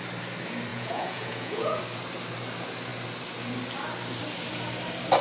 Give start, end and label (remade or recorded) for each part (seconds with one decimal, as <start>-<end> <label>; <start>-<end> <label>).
0.0-0.7 recorded; 0.7-1.8 remade; 1.8-5.2 recorded